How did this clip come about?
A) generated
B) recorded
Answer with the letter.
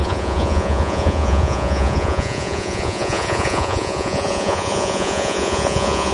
A